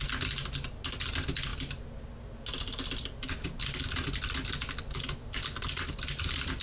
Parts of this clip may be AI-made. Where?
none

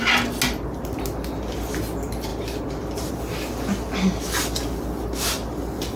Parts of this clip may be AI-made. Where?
none

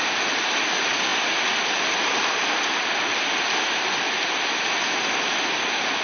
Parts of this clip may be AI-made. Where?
none

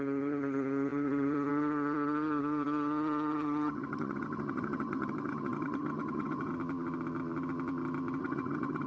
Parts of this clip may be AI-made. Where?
0.0-6.5 (vocoder, HiFi-GAN); 8.2-8.9

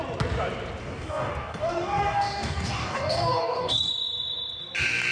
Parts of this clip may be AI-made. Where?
0.8-3.9 (codec, DAC)

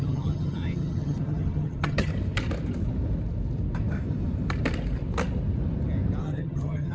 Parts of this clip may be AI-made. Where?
0.0-2.1 (vocoder, HiFi-GAN); 6.2-6.9

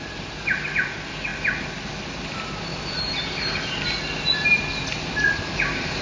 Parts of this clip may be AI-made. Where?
none

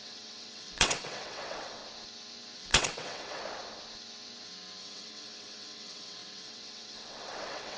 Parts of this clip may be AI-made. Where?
0.0-1.8 (vocoder, WaveNeXt); 2.6-3.4; 4.8-7.8